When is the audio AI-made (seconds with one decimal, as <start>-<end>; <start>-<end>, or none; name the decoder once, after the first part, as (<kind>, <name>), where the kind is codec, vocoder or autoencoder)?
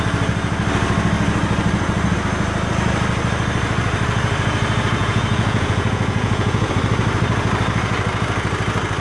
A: 5.0-6.7 (vocoder, Vocos)